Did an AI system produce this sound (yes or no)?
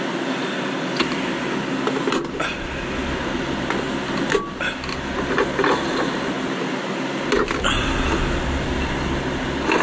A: no